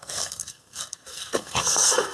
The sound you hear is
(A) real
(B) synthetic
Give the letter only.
B